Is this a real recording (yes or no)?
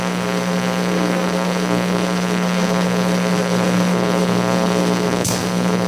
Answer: no